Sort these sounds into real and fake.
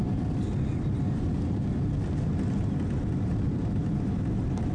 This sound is real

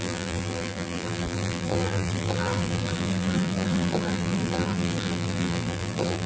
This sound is fake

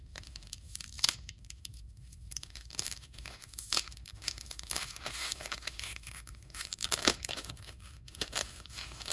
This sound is fake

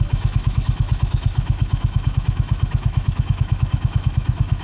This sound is fake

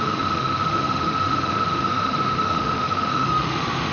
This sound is fake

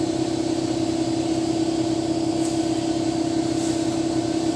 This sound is real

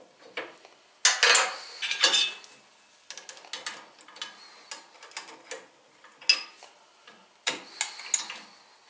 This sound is real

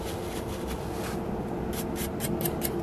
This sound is real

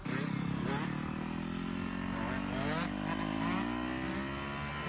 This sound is real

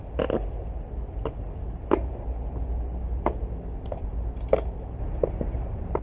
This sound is real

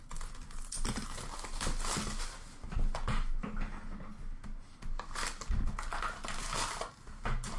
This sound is real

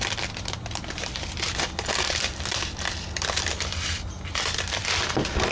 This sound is fake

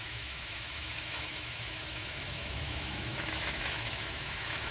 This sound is fake